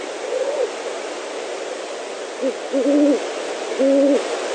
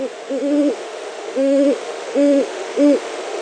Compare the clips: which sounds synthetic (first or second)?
second